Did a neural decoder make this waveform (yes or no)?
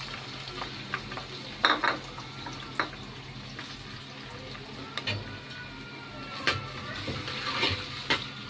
no